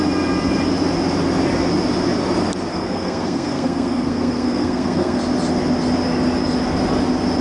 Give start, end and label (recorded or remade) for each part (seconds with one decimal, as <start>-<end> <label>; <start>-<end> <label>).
0.0-2.7 recorded; 2.7-5.2 remade; 5.2-7.4 recorded